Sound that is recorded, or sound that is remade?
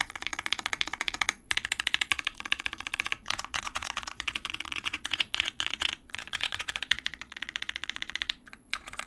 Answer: remade